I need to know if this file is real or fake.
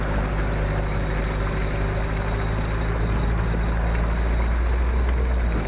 real